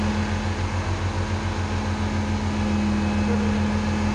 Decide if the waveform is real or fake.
real